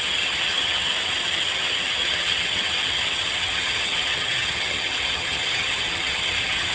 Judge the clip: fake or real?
fake